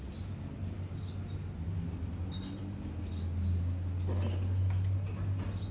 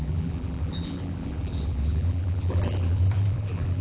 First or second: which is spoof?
second